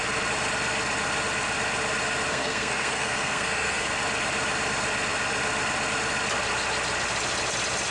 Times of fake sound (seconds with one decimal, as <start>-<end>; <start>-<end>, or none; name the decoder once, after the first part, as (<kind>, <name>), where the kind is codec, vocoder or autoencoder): 2.3-3.9 (codec, SNAC)